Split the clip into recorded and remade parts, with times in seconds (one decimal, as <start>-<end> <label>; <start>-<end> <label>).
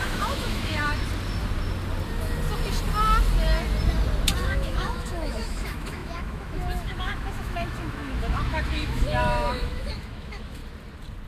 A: 0.0-1.0 remade; 1.0-4.4 recorded; 4.4-10.6 remade; 10.6-11.3 recorded